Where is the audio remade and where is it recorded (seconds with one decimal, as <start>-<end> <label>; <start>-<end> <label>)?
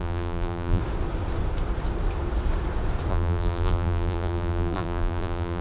0.0-0.8 remade; 0.8-3.1 recorded; 3.1-5.6 remade